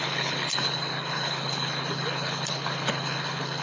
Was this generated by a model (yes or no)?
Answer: yes